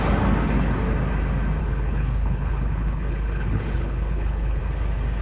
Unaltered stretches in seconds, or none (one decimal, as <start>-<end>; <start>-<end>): 0.0-1.6; 4.6-5.2